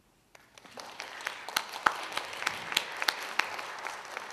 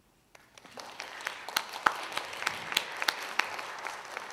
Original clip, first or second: first